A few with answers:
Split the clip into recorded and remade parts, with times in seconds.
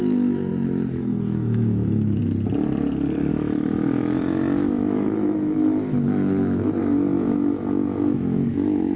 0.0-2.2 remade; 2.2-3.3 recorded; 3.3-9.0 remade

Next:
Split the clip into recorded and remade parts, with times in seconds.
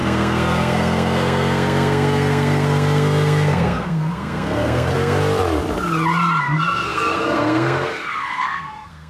0.0-5.2 remade; 5.2-6.4 recorded; 6.4-9.1 remade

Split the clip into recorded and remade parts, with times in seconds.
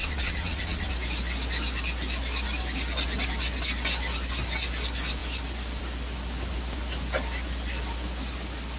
0.0-0.9 remade; 0.9-8.8 recorded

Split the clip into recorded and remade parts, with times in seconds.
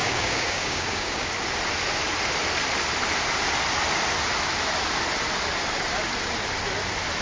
0.0-1.3 remade; 1.3-7.2 recorded